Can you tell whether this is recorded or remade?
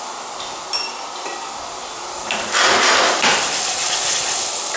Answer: recorded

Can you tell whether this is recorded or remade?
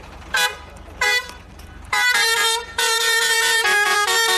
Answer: remade